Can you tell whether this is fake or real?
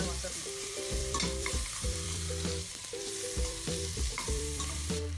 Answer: fake